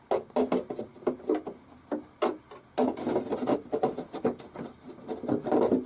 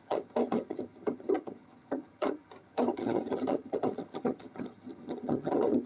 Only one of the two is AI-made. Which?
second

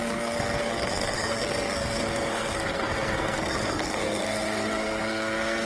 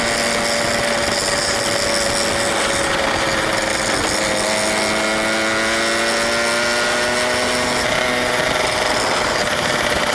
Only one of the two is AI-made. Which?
first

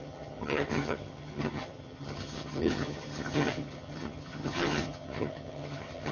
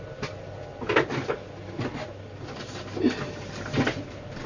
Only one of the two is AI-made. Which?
first